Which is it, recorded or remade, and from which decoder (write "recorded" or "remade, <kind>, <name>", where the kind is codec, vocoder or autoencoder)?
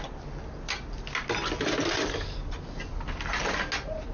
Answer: recorded